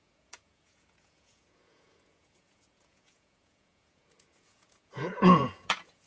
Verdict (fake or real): fake